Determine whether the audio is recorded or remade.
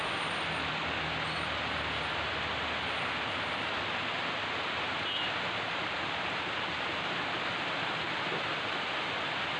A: recorded